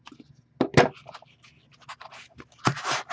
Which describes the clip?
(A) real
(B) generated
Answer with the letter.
A